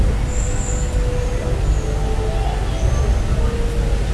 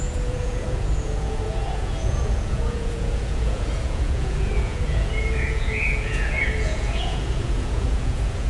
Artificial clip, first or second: second